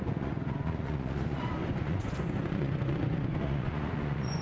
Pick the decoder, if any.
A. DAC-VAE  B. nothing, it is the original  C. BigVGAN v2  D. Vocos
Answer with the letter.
D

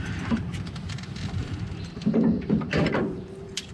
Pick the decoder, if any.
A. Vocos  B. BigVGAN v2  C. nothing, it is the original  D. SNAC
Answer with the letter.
B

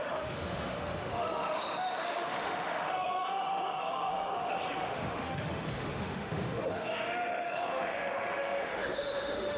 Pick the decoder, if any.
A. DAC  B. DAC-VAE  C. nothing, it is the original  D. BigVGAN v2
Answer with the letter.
B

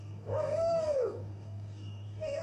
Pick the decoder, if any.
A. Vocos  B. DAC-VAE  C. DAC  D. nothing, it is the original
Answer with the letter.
C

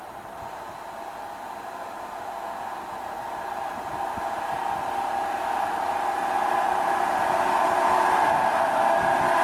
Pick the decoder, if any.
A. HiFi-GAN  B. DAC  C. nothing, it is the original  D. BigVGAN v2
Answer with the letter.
C